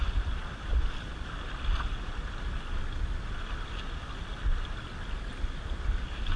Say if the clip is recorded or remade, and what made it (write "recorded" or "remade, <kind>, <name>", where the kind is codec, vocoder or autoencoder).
recorded